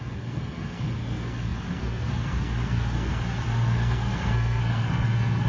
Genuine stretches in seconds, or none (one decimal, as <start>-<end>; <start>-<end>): none